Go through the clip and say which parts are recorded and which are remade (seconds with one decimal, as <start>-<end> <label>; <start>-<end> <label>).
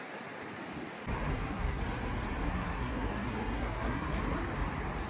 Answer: 0.0-1.3 recorded; 1.3-1.8 remade; 1.8-2.4 recorded; 2.4-4.2 remade; 4.2-5.1 recorded